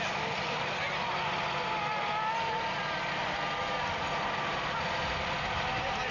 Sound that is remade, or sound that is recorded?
recorded